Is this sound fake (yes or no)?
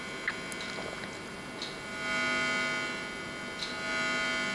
no